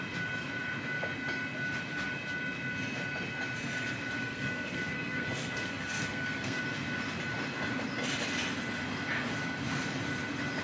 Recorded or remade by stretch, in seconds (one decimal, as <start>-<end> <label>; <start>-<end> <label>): 0.0-4.2 recorded; 4.2-6.6 remade; 6.6-10.6 recorded